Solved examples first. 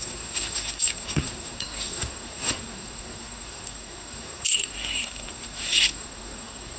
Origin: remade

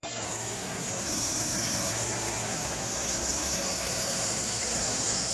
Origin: remade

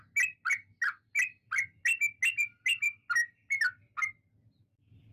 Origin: recorded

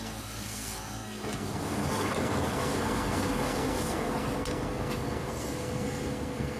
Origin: remade